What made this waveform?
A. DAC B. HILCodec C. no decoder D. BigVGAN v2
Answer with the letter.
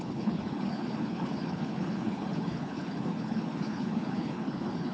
B